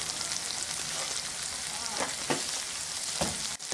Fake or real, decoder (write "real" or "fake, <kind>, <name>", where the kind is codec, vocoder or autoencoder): real